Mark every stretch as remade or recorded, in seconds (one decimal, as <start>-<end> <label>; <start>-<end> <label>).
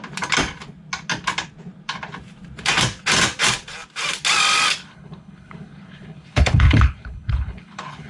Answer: 0.0-4.8 recorded; 4.8-8.1 remade